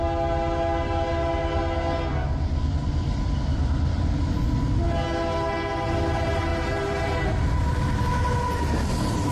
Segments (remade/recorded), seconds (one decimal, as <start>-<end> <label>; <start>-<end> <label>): 0.0-6.5 recorded; 6.5-8.0 remade; 8.0-9.3 recorded